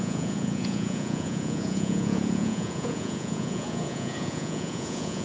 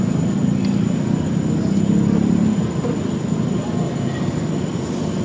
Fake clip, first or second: first